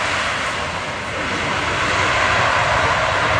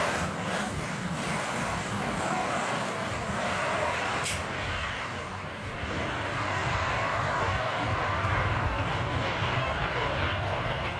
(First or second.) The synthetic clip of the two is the second